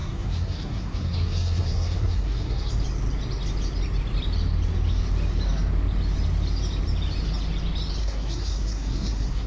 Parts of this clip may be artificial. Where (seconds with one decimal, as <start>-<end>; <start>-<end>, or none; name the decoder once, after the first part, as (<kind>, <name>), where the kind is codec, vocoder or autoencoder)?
0.0-2.7 (codec, SNAC); 8.0-9.5